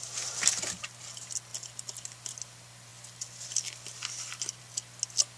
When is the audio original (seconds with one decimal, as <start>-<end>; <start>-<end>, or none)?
0.0-5.4